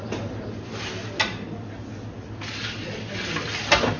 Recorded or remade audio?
recorded